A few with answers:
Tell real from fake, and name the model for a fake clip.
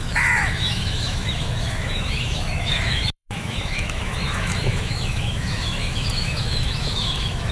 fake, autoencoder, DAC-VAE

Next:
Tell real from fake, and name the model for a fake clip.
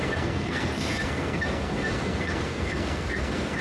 fake, codec, SNAC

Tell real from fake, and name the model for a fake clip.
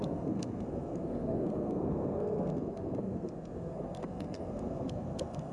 fake, codec, SNAC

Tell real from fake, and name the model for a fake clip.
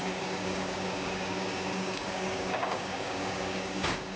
fake, codec, DAC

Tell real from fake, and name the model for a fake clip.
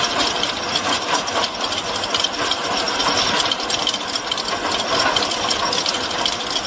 real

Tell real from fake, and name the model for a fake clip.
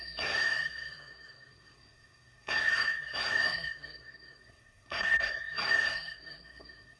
fake, codec, SNAC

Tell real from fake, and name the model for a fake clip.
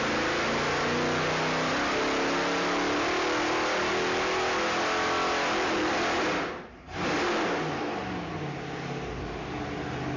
real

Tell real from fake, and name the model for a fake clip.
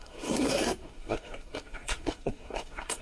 fake, codec, SNAC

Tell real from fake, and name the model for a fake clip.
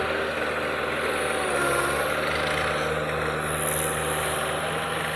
real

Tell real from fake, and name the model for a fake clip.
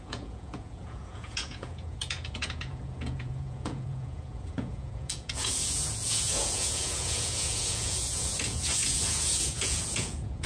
fake, vocoder, Vocos